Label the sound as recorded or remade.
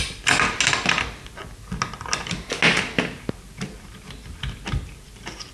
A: recorded